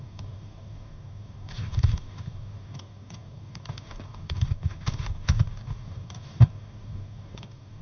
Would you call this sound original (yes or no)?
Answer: no